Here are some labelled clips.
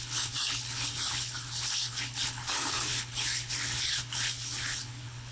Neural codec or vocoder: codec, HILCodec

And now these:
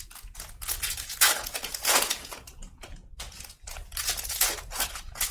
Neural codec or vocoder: vocoder, Vocos